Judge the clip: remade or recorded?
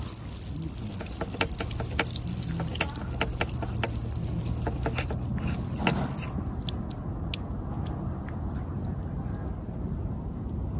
recorded